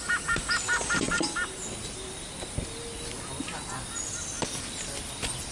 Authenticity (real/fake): real